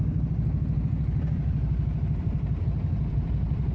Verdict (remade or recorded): recorded